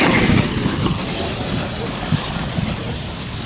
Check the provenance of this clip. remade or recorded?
recorded